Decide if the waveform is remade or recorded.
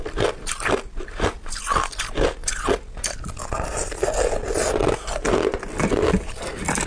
recorded